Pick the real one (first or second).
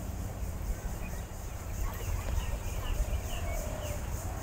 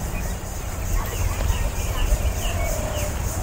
second